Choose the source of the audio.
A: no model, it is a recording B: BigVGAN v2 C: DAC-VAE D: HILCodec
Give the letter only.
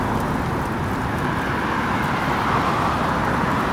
A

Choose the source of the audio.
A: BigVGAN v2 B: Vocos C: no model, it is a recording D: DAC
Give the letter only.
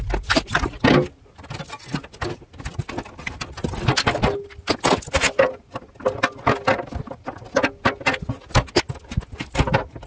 C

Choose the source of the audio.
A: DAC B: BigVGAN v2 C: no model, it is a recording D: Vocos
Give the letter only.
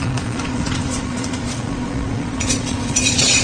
D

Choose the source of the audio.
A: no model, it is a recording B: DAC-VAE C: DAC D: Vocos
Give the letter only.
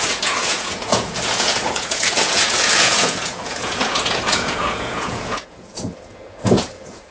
D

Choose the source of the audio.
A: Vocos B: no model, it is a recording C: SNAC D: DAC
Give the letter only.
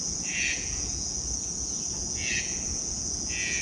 A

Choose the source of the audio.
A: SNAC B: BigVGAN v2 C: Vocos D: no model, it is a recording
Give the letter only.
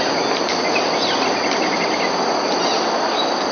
D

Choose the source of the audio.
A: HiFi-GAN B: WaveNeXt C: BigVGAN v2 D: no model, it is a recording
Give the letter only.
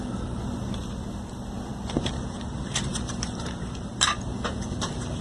C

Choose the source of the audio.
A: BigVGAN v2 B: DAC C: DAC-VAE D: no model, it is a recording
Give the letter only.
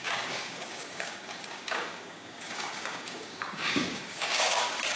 B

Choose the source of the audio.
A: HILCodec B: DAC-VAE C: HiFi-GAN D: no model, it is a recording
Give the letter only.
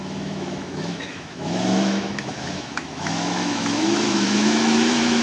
B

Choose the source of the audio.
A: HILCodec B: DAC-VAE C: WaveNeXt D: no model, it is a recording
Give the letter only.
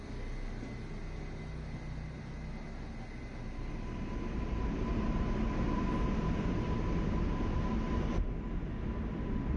D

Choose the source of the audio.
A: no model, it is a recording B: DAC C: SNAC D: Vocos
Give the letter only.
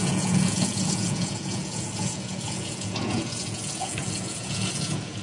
D